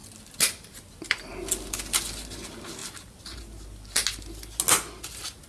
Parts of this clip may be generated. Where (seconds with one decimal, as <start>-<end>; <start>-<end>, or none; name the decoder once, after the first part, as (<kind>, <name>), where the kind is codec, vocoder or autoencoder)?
none